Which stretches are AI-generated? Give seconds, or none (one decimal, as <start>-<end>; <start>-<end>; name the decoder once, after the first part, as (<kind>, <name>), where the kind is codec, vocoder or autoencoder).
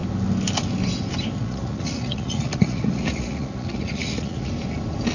1.4-4.5 (vocoder, Vocos)